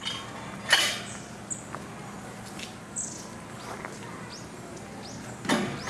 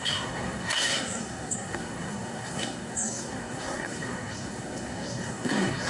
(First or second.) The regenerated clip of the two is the second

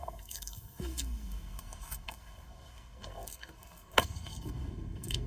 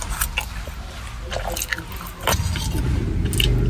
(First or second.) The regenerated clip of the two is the first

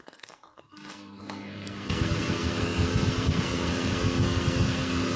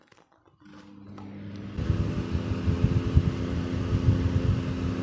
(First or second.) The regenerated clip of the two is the first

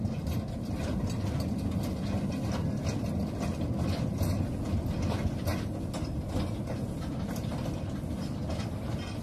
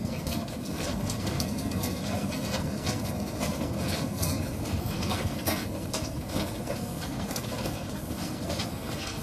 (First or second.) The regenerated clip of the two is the second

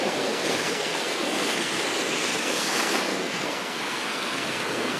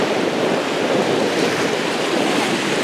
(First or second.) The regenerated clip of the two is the first